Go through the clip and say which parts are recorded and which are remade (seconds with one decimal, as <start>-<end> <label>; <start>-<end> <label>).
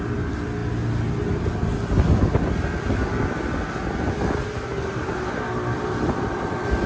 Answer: 0.0-0.6 remade; 0.6-1.3 recorded; 1.3-3.8 remade; 3.8-5.5 recorded; 5.5-6.9 remade